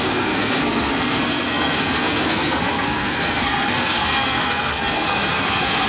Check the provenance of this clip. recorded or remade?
remade